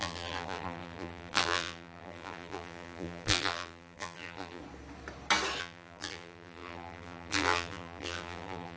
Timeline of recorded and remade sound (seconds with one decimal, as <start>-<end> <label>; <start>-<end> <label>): 0.0-4.6 remade; 4.6-5.6 recorded; 5.6-8.8 remade